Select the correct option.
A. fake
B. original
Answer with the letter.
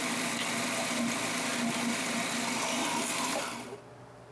B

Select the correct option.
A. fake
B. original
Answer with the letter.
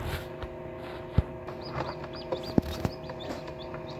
B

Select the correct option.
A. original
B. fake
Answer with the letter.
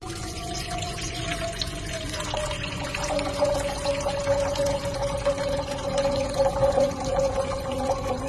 B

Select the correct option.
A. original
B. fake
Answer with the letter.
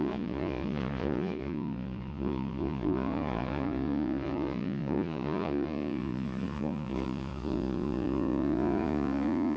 B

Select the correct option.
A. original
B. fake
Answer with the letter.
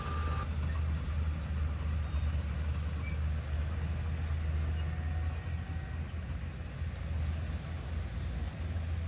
A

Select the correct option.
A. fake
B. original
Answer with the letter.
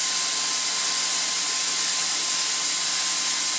B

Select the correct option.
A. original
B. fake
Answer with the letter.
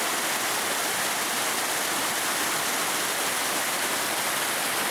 A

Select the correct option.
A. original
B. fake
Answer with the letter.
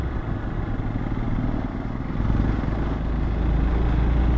A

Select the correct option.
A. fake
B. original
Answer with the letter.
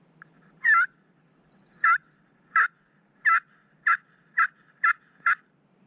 B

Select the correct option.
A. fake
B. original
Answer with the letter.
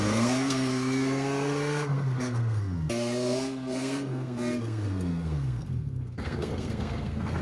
A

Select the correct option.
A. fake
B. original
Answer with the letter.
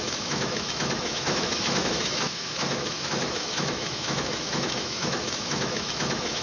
A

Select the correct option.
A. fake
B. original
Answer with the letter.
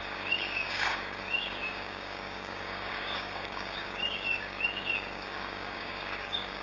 A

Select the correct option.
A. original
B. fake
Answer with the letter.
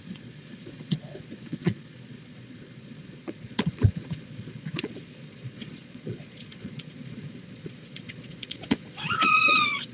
B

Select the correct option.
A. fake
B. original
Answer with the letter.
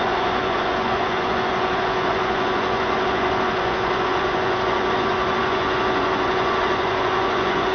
A